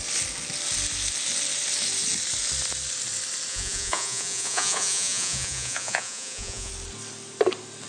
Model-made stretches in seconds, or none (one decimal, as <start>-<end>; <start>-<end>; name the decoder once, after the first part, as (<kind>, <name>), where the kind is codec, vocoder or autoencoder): 3.5-6.7 (vocoder, Vocos)

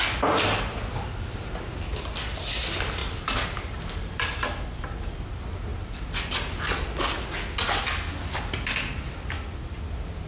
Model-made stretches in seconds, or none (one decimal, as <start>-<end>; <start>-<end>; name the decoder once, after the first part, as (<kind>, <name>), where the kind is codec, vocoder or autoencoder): none

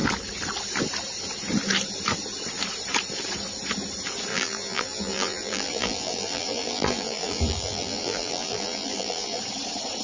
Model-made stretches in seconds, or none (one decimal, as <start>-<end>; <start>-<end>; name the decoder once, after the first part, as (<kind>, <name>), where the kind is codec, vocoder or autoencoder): 4.3-9.4 (vocoder, BigVGAN v2)

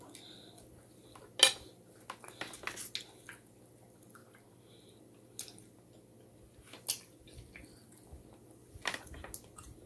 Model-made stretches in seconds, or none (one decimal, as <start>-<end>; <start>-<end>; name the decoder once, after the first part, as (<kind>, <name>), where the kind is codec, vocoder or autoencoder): none

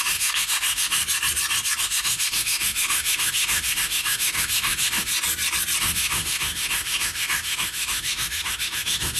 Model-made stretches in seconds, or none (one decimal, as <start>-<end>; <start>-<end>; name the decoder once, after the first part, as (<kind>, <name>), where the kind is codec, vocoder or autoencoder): 0.0-1.0 (autoencoder, DAC-VAE); 1.8-5.1; 5.8-9.2

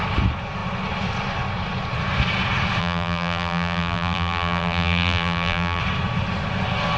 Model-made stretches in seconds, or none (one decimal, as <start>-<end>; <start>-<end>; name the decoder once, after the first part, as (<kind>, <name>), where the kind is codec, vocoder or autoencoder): 2.8-5.8 (vocoder, BigVGAN v2)

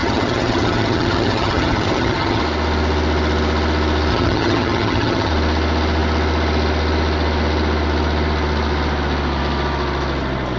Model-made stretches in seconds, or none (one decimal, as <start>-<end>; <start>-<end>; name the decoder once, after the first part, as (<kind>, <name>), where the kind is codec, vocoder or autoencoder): 0.0-2.4 (vocoder, HiFi-GAN); 4.1-5.3

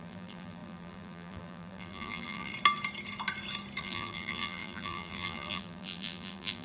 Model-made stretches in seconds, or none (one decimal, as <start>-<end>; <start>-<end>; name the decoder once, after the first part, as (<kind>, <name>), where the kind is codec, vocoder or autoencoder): 0.0-2.5 (vocoder, BigVGAN v2); 3.8-6.6